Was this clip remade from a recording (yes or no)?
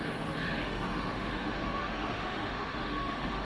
yes